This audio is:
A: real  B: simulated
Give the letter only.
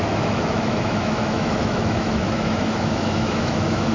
B